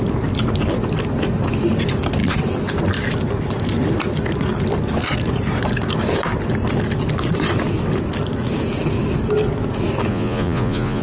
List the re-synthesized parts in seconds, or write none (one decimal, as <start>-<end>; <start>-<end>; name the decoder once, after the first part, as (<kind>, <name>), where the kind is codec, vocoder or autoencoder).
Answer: 10.1-11.0 (vocoder, Vocos)